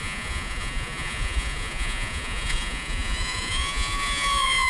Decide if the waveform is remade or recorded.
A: remade